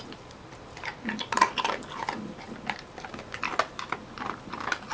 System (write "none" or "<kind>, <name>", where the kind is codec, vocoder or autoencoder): none